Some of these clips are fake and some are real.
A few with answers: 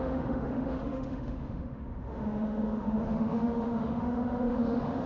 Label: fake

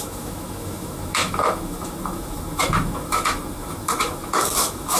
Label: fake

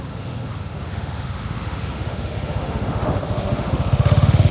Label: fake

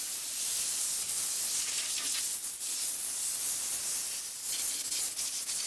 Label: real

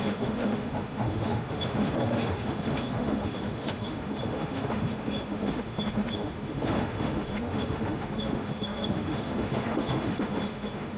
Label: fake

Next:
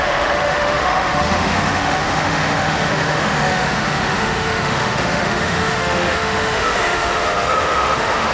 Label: fake